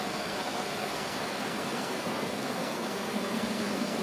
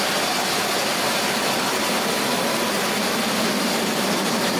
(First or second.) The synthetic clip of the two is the first